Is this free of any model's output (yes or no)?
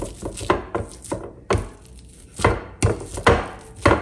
yes